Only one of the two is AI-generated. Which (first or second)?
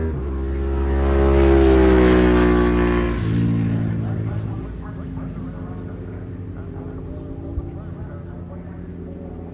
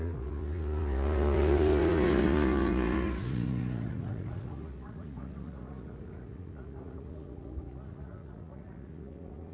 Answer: second